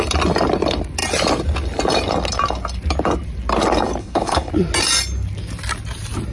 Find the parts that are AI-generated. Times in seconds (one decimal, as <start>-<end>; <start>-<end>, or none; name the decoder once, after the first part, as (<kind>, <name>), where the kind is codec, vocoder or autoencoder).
4.0-4.5 (codec, HILCodec)